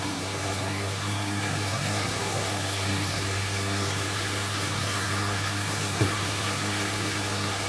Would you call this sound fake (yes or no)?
yes